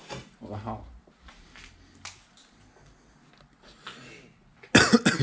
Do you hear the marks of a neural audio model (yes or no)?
no